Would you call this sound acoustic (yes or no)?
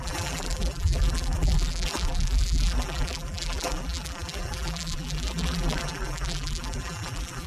no